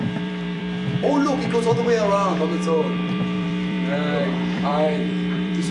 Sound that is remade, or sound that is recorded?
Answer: remade